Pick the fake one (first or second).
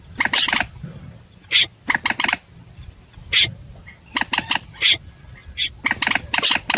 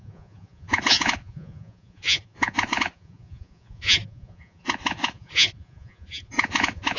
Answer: second